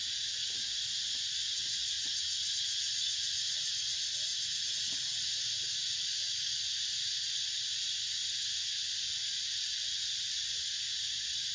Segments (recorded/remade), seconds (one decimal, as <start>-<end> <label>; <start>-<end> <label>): 0.0-11.5 recorded